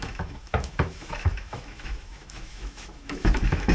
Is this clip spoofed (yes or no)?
yes